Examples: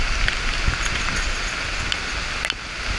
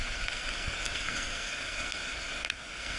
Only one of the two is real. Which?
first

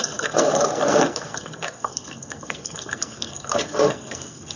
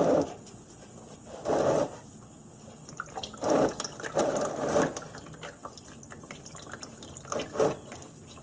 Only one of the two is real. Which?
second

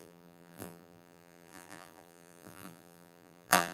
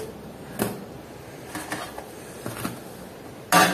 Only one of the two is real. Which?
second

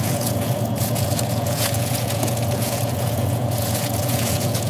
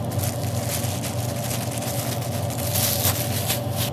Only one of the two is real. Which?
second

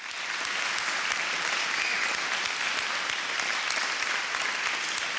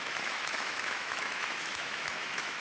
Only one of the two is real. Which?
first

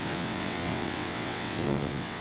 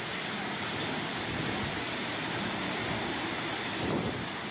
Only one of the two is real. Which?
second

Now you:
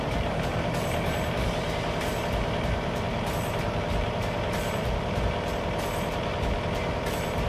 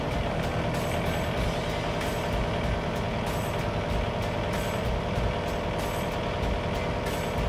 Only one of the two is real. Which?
second